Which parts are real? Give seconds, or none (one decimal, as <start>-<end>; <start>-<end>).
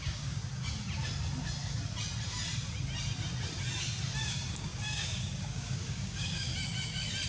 0.4-4.2; 6.5-7.3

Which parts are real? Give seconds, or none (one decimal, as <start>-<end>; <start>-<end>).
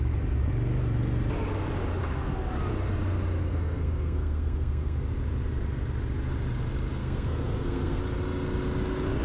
0.0-3.5; 5.0-7.0; 8.0-9.2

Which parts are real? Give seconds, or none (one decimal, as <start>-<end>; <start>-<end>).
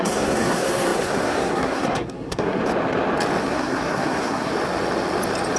2.6-3.4; 4.5-5.6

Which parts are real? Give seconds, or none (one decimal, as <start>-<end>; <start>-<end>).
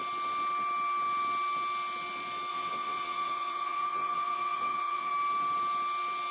0.0-2.5; 5.1-6.3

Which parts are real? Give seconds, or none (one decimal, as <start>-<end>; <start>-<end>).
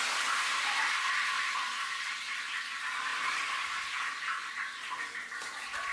0.0-5.9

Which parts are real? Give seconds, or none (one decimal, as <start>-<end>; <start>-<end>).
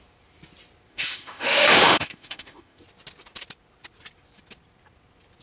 0.0-0.9; 2.8-5.4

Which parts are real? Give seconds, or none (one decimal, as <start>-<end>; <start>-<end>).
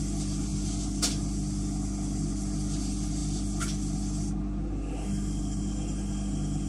0.0-6.7